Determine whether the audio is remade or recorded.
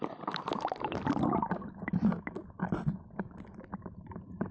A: remade